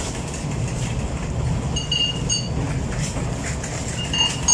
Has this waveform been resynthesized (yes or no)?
no